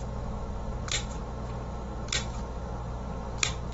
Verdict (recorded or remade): recorded